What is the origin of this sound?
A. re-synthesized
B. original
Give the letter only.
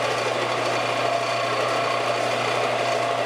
B